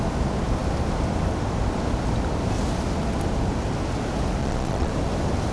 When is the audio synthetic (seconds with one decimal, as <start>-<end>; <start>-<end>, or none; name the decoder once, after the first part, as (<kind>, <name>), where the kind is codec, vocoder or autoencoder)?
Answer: 4.4-4.9 (vocoder, Vocos)